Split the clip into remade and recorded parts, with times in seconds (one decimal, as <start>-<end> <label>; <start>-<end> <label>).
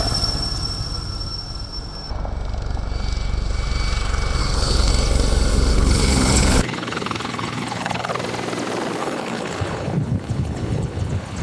0.0-4.4 recorded; 4.4-4.9 remade; 4.9-5.7 recorded; 5.7-8.1 remade; 8.1-9.0 recorded; 9.0-11.4 remade